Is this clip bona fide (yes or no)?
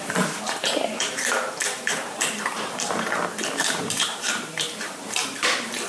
no